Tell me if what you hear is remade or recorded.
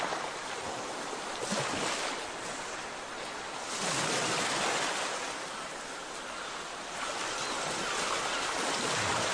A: recorded